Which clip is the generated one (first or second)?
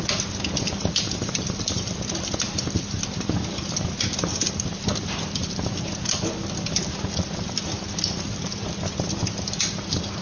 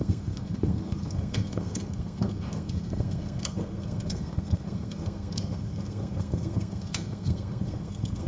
second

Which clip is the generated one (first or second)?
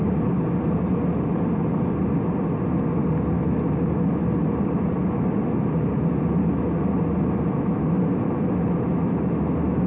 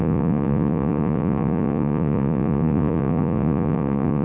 second